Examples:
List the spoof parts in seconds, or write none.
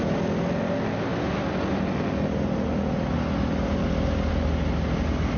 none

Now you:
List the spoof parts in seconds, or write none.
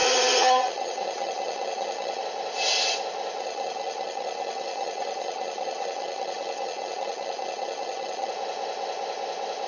0.0-2.2 (vocoder, HiFi-GAN); 3.4-8.3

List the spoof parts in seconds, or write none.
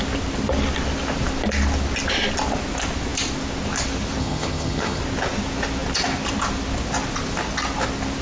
4.2-5.0 (vocoder, HiFi-GAN)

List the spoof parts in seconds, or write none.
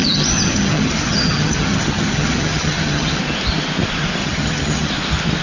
0.0-3.2 (vocoder, HiFi-GAN); 4.2-4.9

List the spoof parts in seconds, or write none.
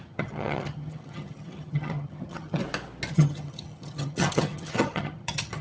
0.0-2.6 (vocoder, HiFi-GAN); 3.1-5.6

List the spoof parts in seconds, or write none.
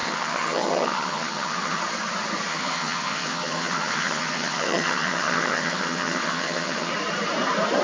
0.0-1.8 (vocoder, HiFi-GAN); 2.5-6.9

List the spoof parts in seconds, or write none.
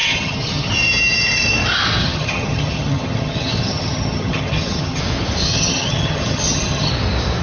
0.0-0.7 (vocoder, HiFi-GAN); 2.0-5.0; 5.4-6.9